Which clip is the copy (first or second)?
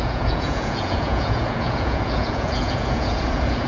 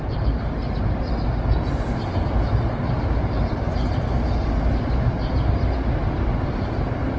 first